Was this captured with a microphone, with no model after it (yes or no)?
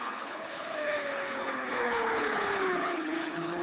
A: no